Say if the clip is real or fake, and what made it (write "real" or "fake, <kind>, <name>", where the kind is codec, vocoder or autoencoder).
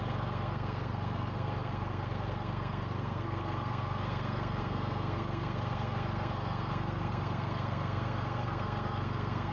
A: fake, codec, SNAC